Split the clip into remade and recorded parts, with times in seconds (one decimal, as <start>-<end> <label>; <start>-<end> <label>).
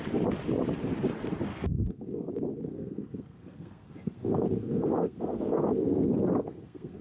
0.0-1.5 recorded; 1.5-2.3 remade; 2.3-2.7 recorded; 2.7-7.0 remade